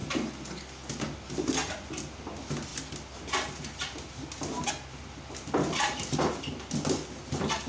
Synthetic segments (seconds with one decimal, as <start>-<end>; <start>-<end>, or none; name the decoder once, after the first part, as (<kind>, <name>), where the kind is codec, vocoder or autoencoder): none